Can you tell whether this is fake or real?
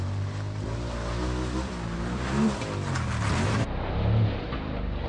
real